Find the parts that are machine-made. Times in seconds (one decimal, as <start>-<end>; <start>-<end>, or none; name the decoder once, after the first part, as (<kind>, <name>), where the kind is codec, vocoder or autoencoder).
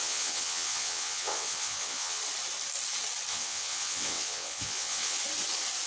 0.0-2.2 (vocoder, WaveNeXt); 3.3-5.2